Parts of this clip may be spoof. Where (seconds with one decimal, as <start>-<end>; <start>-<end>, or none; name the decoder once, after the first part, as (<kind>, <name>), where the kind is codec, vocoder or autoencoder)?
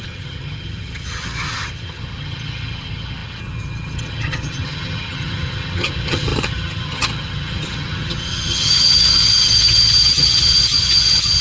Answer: 0.0-11.4 (vocoder, HiFi-GAN)